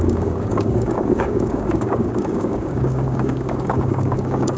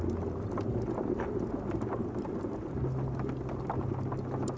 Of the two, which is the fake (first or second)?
first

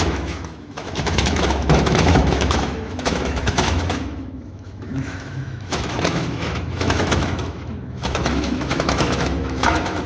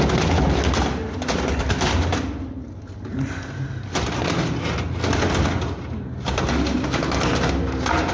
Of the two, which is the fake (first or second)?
first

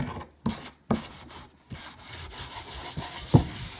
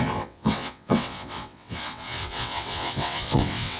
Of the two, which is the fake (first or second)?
second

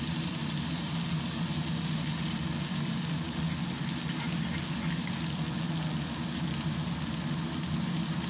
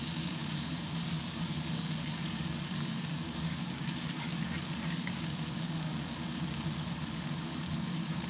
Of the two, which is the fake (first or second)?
second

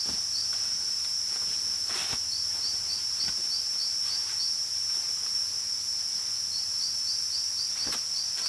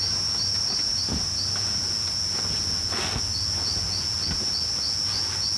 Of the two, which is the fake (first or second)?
first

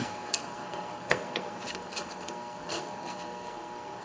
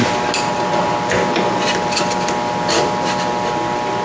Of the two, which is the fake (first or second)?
first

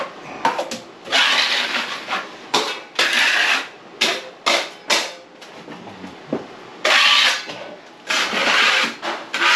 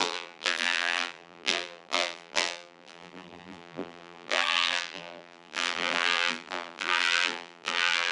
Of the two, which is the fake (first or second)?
second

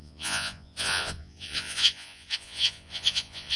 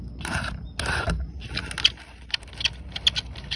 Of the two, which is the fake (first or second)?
first